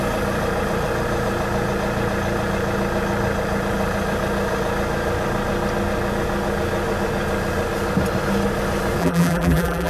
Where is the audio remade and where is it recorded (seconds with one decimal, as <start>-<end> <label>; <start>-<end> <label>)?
0.0-9.0 recorded; 9.0-9.9 remade